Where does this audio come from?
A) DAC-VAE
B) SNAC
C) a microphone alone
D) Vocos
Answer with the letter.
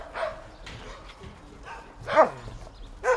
C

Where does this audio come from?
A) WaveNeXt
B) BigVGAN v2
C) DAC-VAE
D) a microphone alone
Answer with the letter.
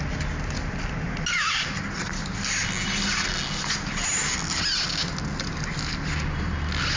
D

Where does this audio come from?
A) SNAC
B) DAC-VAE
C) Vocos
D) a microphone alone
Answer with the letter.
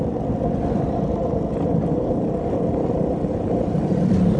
D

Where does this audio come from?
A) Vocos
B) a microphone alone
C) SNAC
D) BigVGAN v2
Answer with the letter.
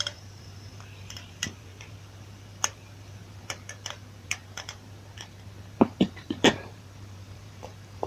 D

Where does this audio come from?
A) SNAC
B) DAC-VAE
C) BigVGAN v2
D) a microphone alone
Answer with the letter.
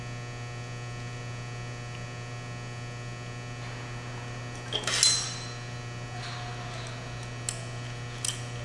D